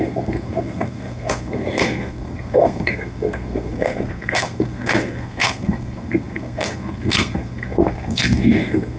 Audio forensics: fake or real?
fake